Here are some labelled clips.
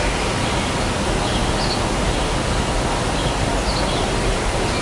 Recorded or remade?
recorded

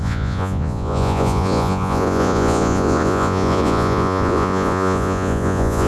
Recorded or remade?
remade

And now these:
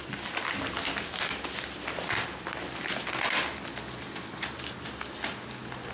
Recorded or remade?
recorded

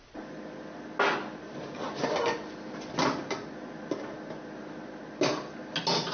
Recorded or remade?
recorded